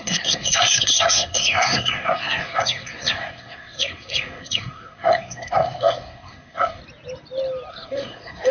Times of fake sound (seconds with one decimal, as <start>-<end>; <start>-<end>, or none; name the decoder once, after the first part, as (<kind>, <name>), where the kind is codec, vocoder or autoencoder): 0.0-6.8 (codec, SNAC); 7.7-8.5